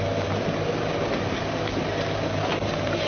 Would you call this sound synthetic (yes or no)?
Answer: no